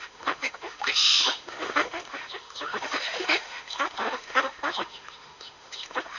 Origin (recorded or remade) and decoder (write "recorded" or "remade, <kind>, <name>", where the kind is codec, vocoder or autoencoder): remade, autoencoder, DAC-VAE